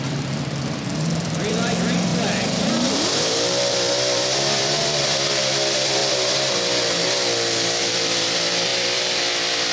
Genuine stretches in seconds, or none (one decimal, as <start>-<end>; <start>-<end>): 6.0-7.8